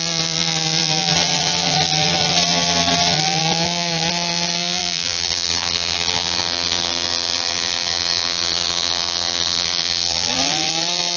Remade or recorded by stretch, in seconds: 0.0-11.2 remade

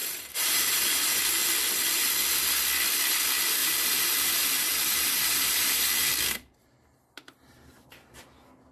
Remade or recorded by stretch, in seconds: 0.0-1.2 remade; 1.2-3.6 recorded; 3.6-8.2 remade; 8.2-8.7 recorded

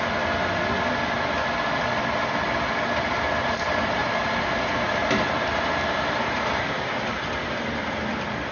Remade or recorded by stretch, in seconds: 0.0-4.0 recorded; 4.0-7.1 remade; 7.1-8.5 recorded

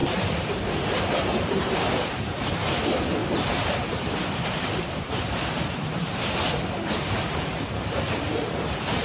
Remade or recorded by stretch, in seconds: 0.0-2.5 remade; 2.5-3.2 recorded; 3.2-8.0 remade; 8.0-9.0 recorded

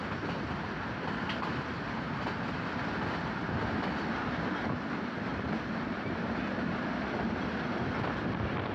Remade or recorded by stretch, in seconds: 0.0-5.3 recorded; 5.3-6.2 remade; 6.2-8.7 recorded

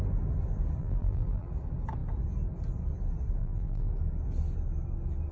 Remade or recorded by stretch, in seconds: 0.0-0.8 recorded; 0.8-1.5 remade; 1.5-3.4 recorded; 3.4-3.9 remade; 3.9-5.3 recorded

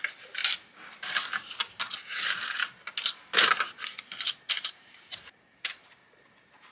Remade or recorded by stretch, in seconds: 0.0-0.4 remade; 0.4-1.0 recorded; 1.0-1.6 remade; 1.6-4.5 recorded; 4.5-6.7 remade